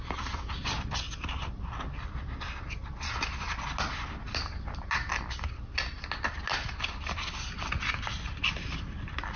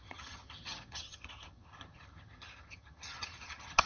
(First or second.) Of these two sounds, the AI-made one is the second